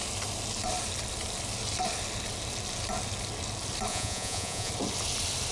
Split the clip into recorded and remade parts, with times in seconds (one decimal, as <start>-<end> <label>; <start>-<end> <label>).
0.0-3.9 recorded; 3.9-4.7 remade; 4.7-5.5 recorded